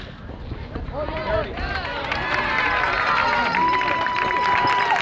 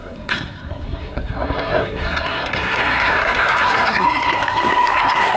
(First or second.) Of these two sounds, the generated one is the second